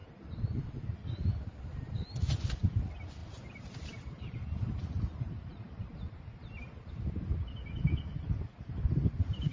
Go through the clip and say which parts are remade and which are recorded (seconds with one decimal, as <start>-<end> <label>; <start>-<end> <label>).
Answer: 0.0-0.8 remade; 0.8-3.2 recorded; 3.2-6.9 remade; 6.9-9.5 recorded